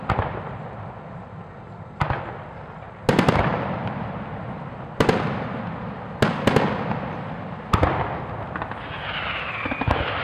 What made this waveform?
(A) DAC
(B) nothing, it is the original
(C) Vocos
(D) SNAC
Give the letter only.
B